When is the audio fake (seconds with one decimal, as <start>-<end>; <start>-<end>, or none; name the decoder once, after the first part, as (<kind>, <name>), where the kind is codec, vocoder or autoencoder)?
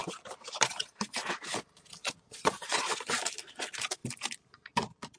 2.0-3.2 (vocoder, Vocos)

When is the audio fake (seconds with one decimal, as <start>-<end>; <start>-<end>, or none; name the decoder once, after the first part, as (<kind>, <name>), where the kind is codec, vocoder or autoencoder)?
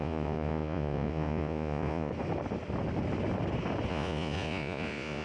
0.0-2.1 (vocoder, Vocos); 3.9-5.2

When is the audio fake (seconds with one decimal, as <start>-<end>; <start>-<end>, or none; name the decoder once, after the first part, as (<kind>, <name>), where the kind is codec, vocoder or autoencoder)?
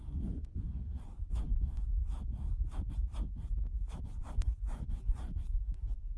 0.0-2.0 (vocoder, Vocos); 4.2-6.2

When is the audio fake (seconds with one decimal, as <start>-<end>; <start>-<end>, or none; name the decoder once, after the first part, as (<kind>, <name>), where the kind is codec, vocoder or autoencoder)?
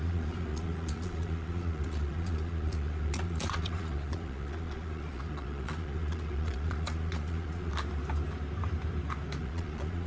0.0-7.7 (vocoder, Vocos); 9.4-10.1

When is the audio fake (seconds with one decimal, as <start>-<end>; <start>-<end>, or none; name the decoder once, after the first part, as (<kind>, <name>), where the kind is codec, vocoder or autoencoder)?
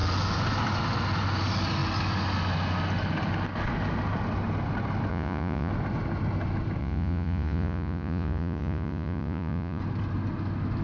5.1-5.7 (vocoder, Vocos); 6.8-9.8